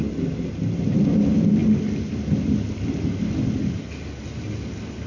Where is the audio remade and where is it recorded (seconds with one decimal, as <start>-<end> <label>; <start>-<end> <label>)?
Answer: 0.0-5.1 recorded